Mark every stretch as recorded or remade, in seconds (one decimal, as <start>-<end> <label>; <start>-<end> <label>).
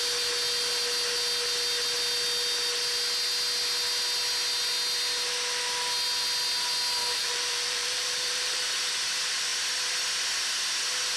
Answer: 0.0-7.0 recorded; 7.0-8.6 remade; 8.6-11.2 recorded